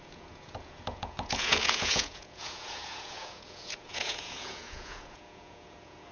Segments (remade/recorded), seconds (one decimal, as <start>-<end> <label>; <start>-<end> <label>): 0.0-6.1 remade